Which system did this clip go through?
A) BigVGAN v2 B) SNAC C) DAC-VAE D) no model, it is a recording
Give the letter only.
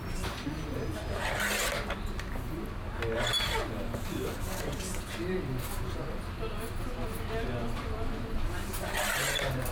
D